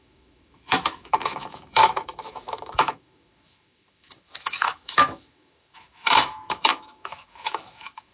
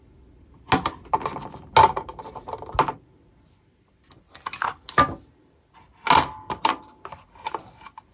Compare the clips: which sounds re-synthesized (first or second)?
first